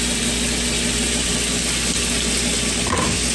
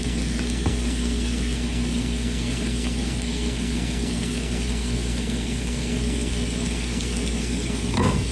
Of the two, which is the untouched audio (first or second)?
first